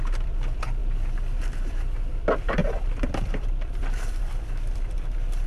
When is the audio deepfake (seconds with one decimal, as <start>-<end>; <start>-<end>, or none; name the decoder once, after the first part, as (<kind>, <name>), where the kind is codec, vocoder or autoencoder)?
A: 0.0-0.8 (vocoder, BigVGAN v2); 1.4-5.5